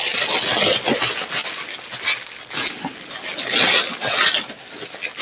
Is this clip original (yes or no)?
yes